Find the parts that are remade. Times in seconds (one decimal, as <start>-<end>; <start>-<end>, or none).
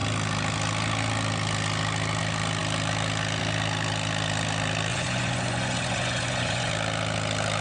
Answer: 4.9-6.7